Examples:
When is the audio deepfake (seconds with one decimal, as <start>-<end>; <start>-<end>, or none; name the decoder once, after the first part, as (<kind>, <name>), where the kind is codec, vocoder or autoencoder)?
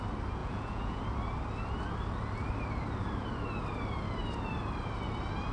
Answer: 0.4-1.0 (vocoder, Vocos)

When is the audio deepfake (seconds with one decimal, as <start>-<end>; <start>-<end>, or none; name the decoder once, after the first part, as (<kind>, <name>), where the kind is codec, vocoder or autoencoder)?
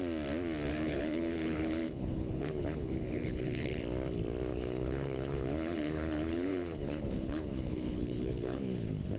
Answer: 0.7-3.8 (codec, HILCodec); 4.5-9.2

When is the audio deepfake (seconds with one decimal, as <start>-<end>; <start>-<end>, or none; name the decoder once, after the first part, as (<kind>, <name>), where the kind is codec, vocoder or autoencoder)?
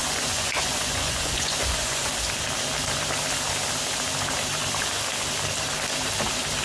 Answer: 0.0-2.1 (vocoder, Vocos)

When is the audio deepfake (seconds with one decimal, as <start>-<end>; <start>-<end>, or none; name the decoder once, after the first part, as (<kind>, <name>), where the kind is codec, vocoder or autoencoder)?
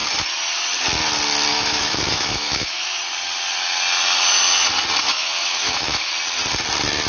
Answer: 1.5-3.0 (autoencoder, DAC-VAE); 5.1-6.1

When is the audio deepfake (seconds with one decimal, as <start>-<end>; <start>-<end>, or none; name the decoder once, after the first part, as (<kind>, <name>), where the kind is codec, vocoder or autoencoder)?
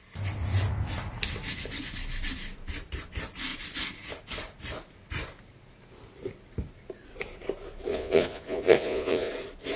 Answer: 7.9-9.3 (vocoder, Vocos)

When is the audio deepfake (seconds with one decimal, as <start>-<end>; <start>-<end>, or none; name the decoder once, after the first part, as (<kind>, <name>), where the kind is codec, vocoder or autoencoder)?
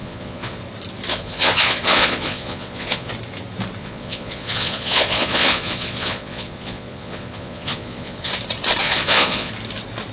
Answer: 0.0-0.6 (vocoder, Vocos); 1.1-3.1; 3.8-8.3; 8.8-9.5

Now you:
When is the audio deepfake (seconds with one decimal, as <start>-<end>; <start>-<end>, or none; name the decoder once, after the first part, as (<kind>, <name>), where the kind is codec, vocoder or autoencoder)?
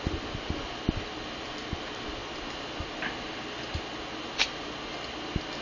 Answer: 0.0-5.6 (vocoder, BigVGAN v2)